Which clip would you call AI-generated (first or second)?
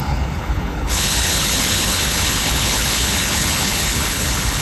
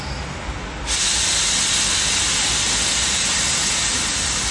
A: first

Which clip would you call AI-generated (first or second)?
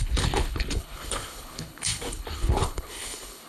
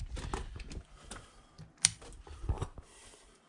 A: first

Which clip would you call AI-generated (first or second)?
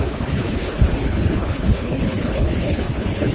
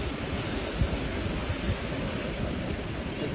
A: first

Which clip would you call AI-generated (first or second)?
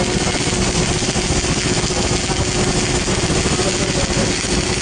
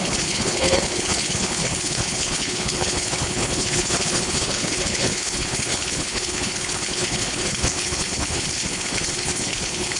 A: second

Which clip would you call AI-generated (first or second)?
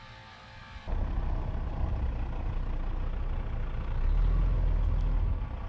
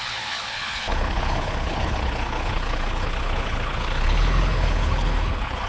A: second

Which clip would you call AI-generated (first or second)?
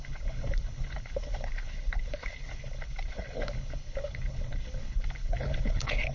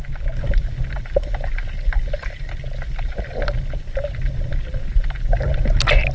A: first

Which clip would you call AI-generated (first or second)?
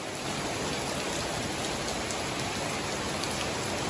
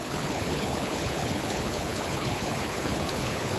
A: second